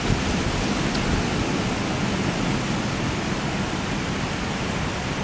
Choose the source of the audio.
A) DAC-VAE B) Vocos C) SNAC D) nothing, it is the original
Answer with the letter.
D